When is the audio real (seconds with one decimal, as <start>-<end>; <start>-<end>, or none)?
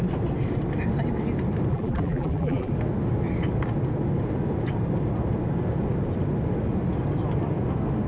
0.0-1.7; 2.7-8.1